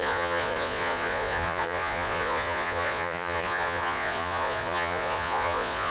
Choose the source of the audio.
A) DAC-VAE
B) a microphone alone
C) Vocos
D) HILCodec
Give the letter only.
C